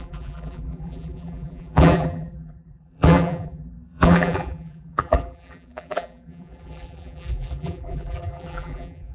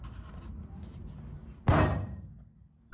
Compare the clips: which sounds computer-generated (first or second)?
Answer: first